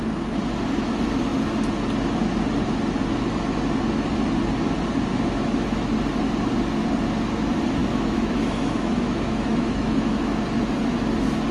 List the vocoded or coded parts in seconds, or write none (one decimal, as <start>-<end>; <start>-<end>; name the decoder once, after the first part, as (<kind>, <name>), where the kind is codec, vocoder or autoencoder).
5.1-5.9 (autoencoder, DAC-VAE); 7.8-10.4